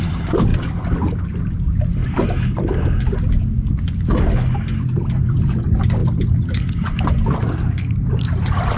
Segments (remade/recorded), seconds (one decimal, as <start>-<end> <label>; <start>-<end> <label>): 0.0-2.0 remade; 2.0-5.2 recorded; 5.2-6.0 remade; 6.0-7.9 recorded; 7.9-8.8 remade